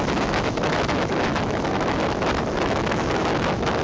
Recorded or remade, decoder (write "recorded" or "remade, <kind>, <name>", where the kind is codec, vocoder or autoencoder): remade, autoencoder, DAC-VAE